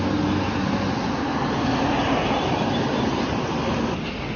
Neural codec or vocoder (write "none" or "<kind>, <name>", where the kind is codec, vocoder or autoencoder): none